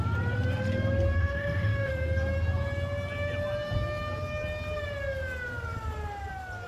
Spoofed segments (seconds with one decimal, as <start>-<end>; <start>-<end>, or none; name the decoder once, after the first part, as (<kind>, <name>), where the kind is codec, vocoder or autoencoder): 1.2-1.9 (autoencoder, DAC-VAE)